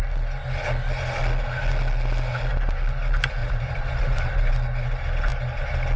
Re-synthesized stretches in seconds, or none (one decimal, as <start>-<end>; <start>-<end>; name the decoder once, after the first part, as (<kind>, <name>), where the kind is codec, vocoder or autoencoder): 3.4-4.5 (vocoder, BigVGAN v2)